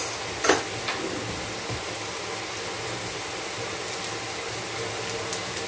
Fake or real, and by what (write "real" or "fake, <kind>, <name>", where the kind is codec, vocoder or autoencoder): real